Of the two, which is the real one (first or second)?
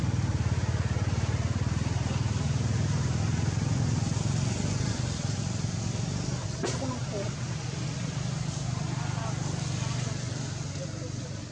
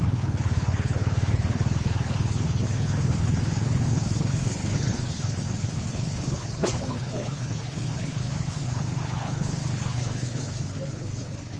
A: first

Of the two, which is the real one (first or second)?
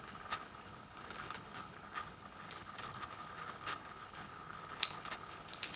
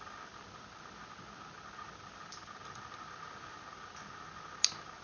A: second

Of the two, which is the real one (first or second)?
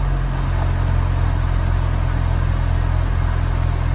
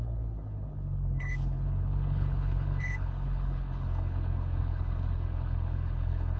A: first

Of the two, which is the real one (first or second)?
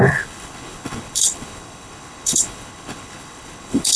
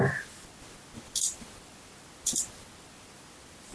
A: second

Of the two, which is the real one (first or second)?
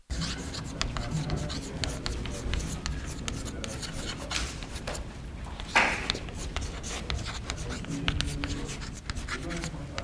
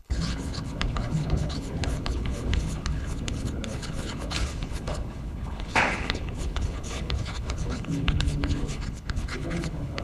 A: first